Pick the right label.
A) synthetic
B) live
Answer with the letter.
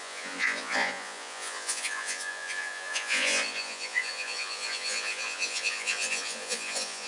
A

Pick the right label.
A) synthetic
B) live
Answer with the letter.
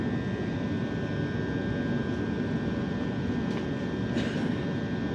B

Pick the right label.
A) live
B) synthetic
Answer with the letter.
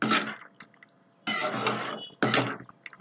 A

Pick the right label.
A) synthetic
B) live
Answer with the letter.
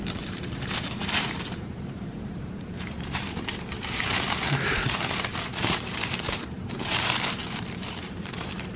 A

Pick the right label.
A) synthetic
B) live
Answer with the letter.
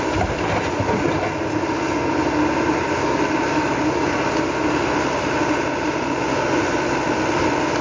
B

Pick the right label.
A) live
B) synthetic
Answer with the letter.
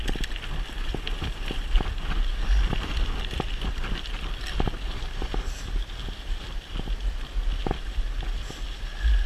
A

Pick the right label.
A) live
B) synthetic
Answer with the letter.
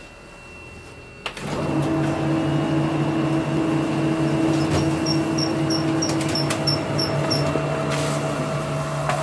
A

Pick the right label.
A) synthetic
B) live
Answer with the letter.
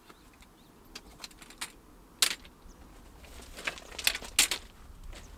B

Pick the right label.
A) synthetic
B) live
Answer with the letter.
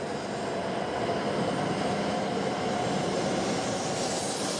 B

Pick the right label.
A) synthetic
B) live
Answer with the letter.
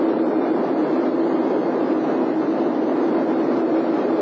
B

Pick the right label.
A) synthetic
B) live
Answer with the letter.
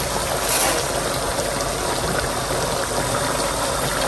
B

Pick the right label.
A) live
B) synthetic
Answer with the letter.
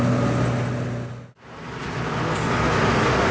A